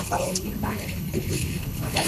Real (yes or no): no